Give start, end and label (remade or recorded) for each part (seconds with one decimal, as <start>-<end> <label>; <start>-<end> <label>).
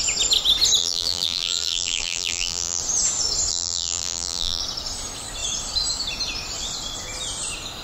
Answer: 0.0-0.8 recorded; 0.8-2.8 remade; 2.8-3.5 recorded; 3.5-4.6 remade; 4.6-7.8 recorded